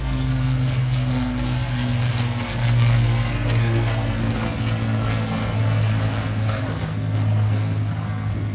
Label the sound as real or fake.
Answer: fake